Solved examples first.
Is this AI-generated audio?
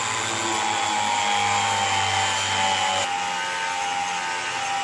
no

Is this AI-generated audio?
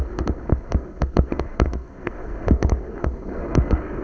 yes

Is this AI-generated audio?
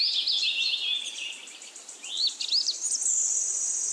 no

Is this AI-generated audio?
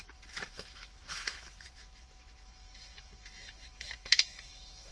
yes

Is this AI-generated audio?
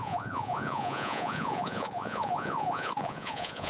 yes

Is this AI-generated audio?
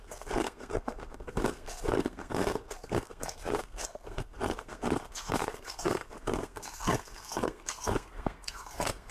yes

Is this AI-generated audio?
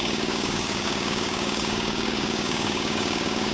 yes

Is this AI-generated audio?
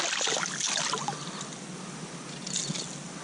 no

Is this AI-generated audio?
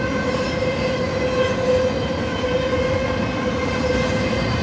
no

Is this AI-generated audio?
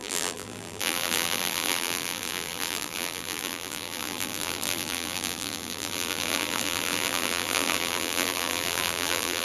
yes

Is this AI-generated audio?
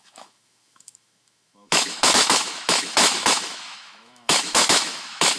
yes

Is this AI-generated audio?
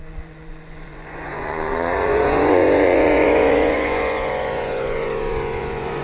yes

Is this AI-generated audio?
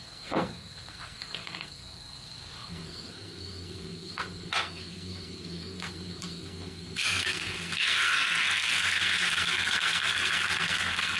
yes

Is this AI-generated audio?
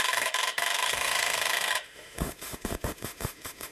yes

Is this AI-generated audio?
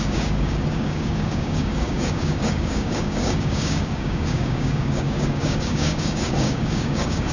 yes